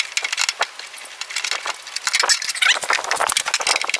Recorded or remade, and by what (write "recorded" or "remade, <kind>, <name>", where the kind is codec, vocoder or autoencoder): recorded